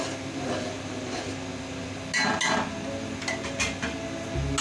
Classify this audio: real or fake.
real